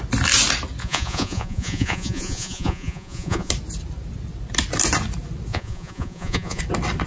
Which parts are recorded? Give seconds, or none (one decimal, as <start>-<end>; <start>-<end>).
0.0-0.8; 3.5-5.5; 6.6-7.1